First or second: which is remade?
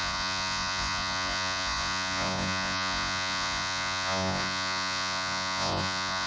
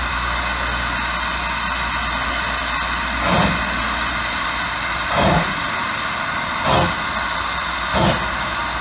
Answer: first